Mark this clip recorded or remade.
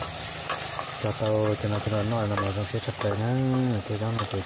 recorded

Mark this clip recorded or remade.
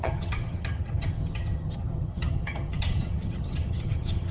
remade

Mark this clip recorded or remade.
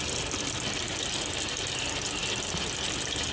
recorded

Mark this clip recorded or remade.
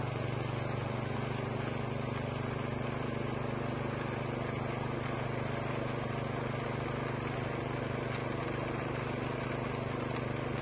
recorded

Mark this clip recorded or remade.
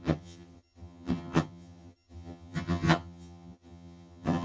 remade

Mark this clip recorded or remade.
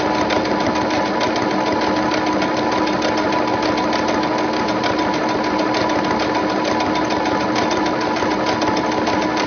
recorded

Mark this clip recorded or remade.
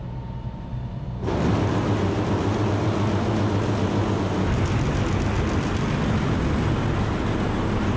recorded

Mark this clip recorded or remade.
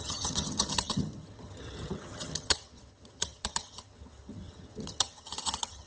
remade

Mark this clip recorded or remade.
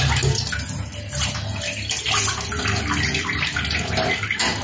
recorded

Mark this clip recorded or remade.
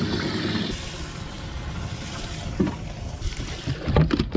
recorded